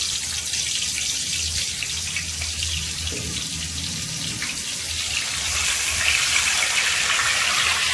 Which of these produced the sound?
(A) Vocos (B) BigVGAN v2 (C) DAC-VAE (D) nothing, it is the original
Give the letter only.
D